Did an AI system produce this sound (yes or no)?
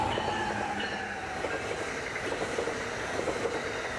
no